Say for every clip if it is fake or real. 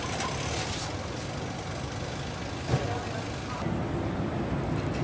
real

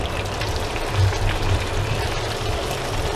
real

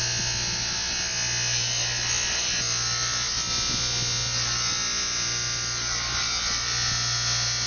real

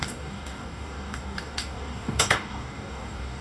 fake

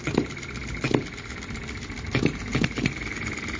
real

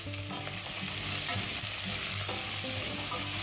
real